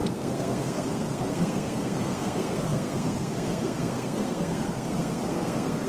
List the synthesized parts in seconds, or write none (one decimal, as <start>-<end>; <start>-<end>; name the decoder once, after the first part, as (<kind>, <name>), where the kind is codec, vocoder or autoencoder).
0.0-5.9 (codec, SNAC)